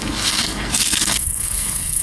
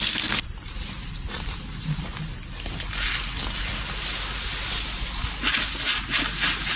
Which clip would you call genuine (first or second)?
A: second